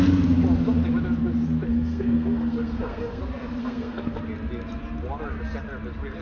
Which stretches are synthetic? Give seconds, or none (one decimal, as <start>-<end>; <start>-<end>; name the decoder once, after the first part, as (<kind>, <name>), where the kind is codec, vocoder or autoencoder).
1.7-3.2 (codec, SNAC); 3.6-4.2